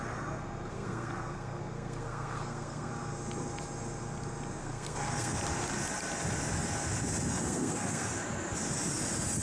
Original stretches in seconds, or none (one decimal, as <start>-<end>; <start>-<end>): 0.0-0.7; 2.9-4.6; 5.4-7.3; 8.1-9.4